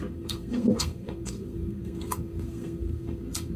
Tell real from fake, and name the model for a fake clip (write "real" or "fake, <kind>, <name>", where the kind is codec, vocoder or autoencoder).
fake, codec, SNAC